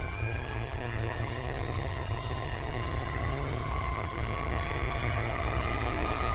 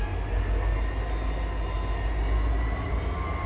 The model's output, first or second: first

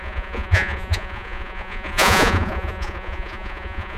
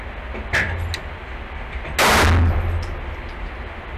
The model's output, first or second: first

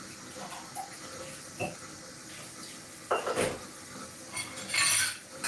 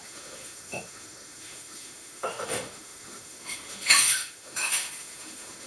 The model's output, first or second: second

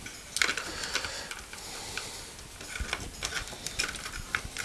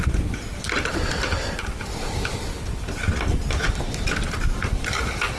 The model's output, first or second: second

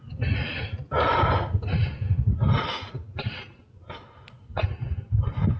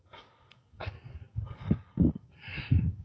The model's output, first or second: second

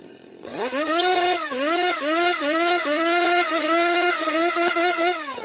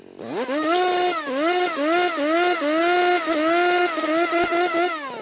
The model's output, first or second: first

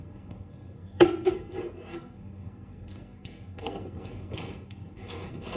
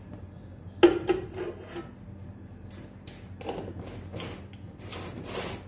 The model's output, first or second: first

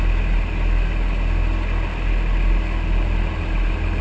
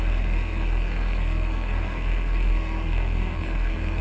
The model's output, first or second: second